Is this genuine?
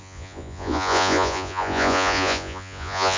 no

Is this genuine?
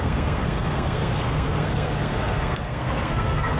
no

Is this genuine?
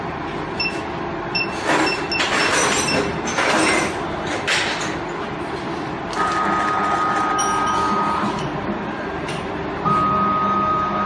yes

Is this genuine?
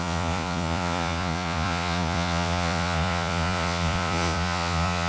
no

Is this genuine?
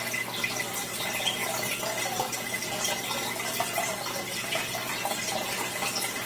yes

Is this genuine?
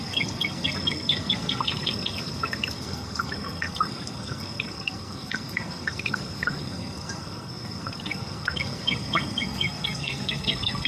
no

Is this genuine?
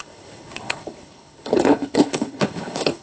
no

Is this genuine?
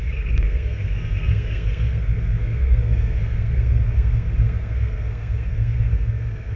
no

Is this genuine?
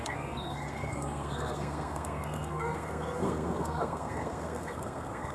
no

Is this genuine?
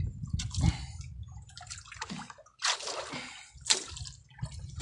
yes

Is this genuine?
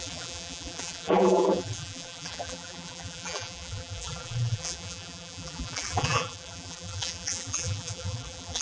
no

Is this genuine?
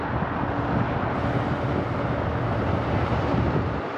yes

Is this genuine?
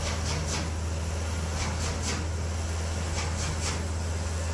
yes